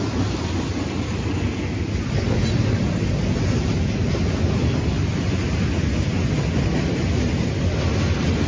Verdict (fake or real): real